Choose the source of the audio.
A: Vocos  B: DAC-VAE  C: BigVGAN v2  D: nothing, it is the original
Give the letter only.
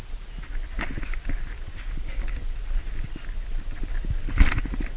D